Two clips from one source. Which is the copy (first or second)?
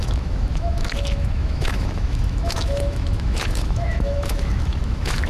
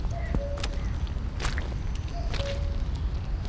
first